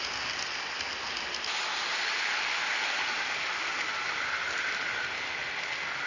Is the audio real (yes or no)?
yes